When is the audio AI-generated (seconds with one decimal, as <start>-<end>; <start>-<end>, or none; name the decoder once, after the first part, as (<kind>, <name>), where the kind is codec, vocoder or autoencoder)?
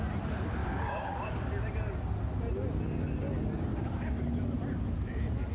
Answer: 0.6-1.3 (codec, DAC); 3.7-4.2